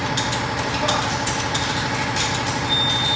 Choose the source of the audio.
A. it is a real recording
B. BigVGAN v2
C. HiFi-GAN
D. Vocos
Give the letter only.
A